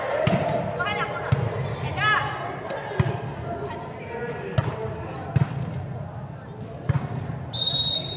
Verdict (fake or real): real